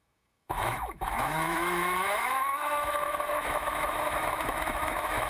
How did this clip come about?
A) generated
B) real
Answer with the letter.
A